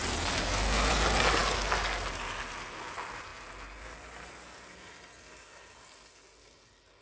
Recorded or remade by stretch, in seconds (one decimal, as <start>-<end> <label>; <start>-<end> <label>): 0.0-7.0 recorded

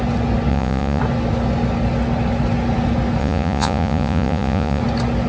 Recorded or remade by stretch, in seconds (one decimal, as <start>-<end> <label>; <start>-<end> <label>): 0.0-0.5 recorded; 0.5-1.0 remade; 1.0-3.2 recorded; 3.2-4.8 remade; 4.8-5.3 recorded

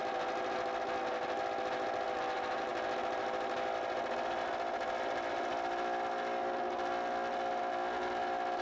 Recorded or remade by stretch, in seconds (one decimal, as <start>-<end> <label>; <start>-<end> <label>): 0.0-8.6 recorded

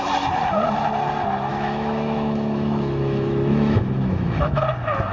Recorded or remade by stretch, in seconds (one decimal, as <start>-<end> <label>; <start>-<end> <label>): 0.0-1.5 recorded; 1.5-4.6 remade; 4.6-5.1 recorded

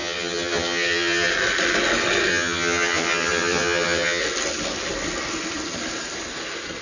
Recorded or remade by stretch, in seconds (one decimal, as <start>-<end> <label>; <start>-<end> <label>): 0.0-1.3 remade; 1.3-2.3 recorded; 2.3-4.2 remade; 4.2-6.8 recorded

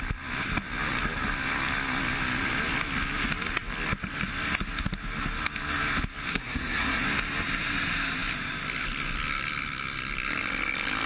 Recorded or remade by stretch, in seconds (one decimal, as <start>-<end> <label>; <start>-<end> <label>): 0.0-6.3 recorded; 6.3-7.0 remade; 7.0-11.1 recorded

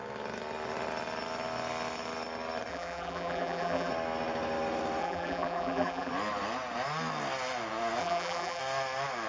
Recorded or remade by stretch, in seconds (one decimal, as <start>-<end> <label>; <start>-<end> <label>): 0.0-2.7 recorded; 2.7-3.9 remade; 3.9-5.0 recorded; 5.0-6.1 remade; 6.1-8.0 recorded; 8.0-8.6 remade; 8.6-9.3 recorded